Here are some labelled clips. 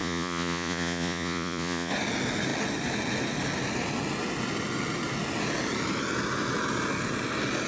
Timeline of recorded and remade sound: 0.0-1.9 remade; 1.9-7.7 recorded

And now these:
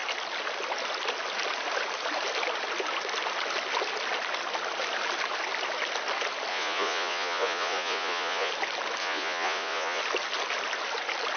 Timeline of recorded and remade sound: 0.0-6.5 recorded; 6.5-8.5 remade; 8.5-9.0 recorded; 9.0-10.0 remade; 10.0-11.4 recorded

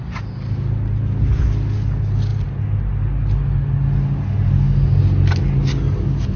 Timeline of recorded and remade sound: 0.0-6.4 recorded

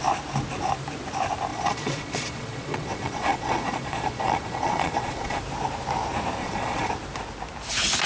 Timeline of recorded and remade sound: 0.0-1.5 recorded; 1.5-5.4 remade; 5.4-6.4 recorded; 6.4-6.9 remade; 6.9-8.1 recorded